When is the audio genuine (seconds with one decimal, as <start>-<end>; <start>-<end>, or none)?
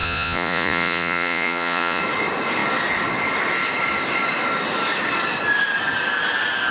2.0-6.7